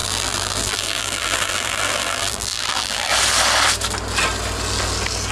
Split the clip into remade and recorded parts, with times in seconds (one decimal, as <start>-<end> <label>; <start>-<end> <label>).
0.0-3.1 remade; 3.1-5.3 recorded